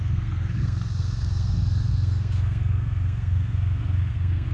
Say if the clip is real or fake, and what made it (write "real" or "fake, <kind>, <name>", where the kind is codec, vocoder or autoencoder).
fake, codec, SNAC